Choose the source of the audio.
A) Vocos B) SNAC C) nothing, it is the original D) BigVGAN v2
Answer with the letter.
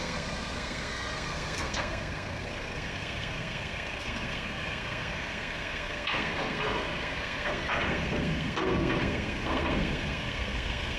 B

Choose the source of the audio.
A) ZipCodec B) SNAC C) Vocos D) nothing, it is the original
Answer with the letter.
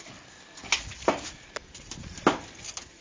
D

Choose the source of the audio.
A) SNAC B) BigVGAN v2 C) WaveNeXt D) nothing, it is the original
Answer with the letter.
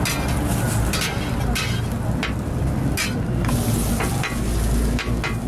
D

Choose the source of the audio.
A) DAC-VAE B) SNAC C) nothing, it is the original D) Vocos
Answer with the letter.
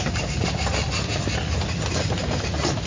C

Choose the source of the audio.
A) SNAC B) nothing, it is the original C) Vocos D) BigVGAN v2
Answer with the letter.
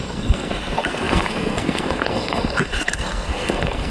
A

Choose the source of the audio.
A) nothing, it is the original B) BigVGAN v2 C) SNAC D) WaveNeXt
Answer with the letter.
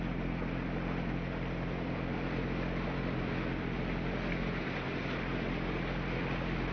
A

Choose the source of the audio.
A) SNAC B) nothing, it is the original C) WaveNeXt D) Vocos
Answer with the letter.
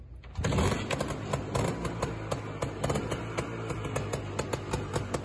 B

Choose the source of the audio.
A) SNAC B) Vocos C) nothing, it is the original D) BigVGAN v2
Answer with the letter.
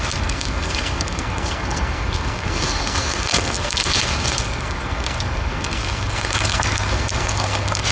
A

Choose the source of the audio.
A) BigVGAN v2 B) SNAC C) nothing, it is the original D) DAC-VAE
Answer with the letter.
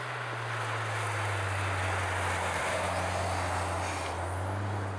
C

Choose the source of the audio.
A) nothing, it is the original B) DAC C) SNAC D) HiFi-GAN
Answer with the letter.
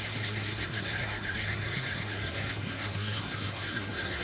C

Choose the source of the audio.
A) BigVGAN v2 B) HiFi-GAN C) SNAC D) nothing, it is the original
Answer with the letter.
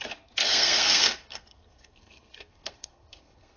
C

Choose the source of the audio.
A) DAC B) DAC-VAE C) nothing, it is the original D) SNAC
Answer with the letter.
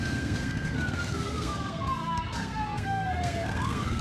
D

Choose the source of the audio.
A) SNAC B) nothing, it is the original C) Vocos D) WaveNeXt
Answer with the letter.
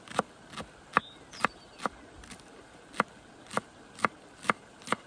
B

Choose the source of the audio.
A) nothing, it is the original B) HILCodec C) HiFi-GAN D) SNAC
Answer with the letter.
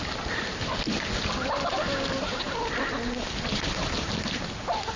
A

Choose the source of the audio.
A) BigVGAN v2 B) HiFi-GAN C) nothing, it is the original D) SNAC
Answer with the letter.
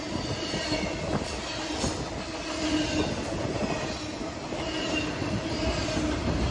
C